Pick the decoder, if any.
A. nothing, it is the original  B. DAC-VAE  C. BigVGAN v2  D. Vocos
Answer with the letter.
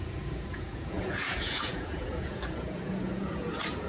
D